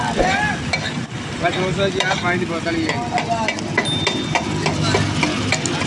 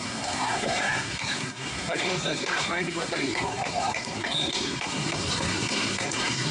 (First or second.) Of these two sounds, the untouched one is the first